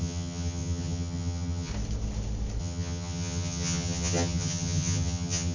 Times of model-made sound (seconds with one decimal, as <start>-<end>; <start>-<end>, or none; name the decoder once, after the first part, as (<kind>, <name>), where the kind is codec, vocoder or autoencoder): 0.0-1.7 (vocoder, HiFi-GAN); 2.6-5.5